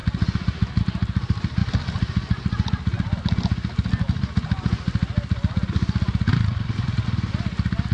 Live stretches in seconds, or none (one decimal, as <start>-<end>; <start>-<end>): 0.0-7.9